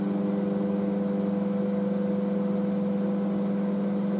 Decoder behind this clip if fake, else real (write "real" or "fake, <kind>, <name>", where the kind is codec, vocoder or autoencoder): real